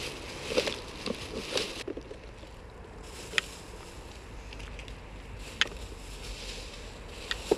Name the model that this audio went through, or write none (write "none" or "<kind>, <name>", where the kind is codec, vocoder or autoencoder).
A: none